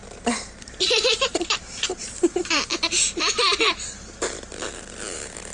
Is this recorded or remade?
remade